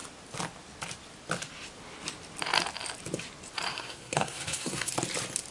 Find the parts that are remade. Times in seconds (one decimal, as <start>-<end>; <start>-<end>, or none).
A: 3.7-4.9